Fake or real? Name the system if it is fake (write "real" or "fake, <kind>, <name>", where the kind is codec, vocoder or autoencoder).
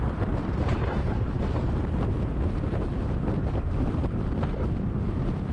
fake, vocoder, BigVGAN v2